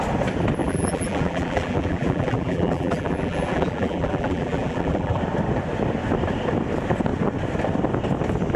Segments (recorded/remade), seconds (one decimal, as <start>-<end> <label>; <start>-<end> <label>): 0.0-0.6 recorded; 0.6-5.2 remade; 5.2-8.6 recorded